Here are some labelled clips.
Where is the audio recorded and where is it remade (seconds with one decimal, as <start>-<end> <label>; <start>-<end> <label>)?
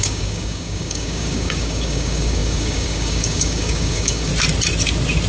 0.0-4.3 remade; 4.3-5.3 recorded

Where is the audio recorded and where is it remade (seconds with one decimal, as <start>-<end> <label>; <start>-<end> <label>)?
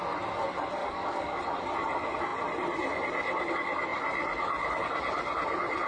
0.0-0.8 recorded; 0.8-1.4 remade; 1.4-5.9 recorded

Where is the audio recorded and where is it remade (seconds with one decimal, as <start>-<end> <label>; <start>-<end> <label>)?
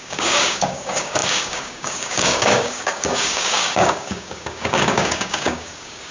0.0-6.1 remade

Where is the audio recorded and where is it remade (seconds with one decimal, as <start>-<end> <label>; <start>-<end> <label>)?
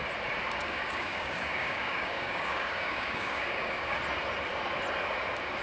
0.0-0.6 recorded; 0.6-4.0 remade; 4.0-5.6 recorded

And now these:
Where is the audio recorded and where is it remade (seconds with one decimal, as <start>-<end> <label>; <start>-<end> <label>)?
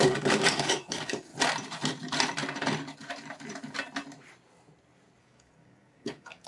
0.0-1.3 remade; 1.3-5.2 recorded; 5.2-6.5 remade